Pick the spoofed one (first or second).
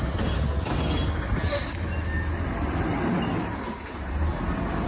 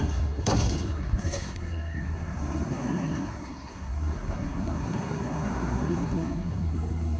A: second